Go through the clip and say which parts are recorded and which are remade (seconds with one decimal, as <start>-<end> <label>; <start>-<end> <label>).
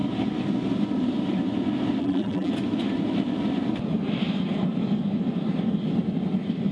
0.0-2.0 recorded; 2.0-2.5 remade; 2.5-6.7 recorded